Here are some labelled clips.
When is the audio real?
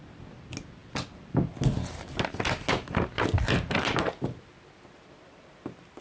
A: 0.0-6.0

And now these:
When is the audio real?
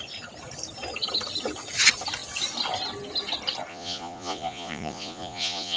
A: 0.0-3.7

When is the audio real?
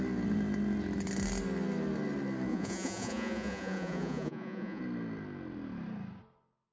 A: 0.0-2.5; 4.8-6.7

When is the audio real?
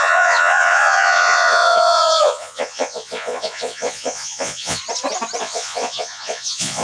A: 4.8-5.4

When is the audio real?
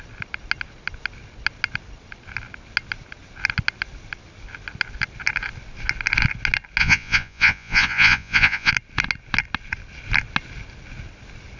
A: 0.0-6.8; 8.7-11.6